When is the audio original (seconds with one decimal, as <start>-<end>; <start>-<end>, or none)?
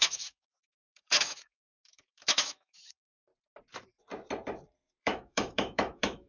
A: 3.3-5.0